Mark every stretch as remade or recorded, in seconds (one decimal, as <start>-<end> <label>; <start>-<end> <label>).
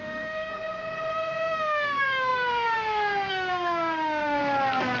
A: 0.0-0.5 remade; 0.5-1.1 recorded; 1.1-4.4 remade; 4.4-5.0 recorded